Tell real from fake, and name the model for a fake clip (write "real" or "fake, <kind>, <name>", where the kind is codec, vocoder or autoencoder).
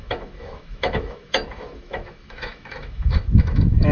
fake, autoencoder, DAC-VAE